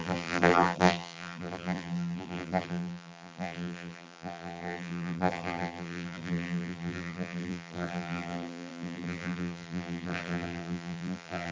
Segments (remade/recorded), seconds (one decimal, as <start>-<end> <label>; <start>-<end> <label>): 0.0-11.5 remade